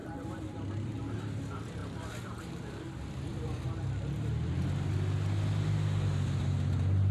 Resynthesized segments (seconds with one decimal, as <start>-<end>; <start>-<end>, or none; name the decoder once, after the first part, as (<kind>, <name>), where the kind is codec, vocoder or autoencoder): 0.0-0.9 (vocoder, BigVGAN v2); 1.8-2.4